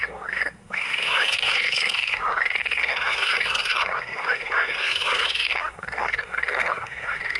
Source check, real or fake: fake